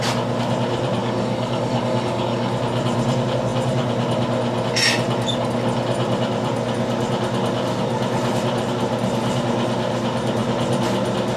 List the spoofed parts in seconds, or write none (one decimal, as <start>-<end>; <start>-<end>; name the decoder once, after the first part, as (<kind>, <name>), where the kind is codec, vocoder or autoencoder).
1.0-2.5 (codec, DAC)